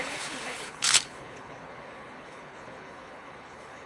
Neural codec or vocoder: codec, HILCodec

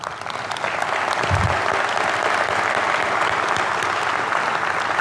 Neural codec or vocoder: none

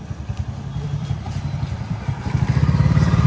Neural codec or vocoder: vocoder, BigVGAN v2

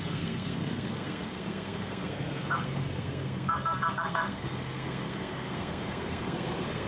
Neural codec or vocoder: codec, SNAC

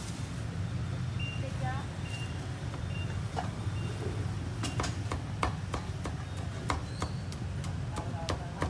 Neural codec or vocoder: none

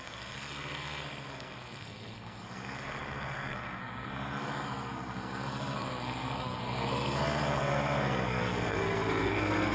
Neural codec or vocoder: codec, SNAC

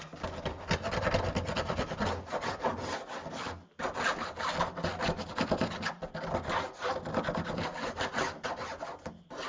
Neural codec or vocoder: none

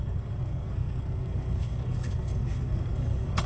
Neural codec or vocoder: codec, SNAC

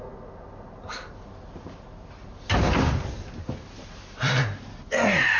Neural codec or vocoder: none